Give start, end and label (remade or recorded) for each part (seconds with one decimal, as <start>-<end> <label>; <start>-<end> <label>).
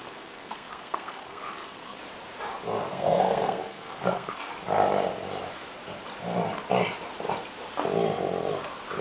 0.0-2.0 remade; 2.0-2.9 recorded; 2.9-4.5 remade; 4.5-9.0 recorded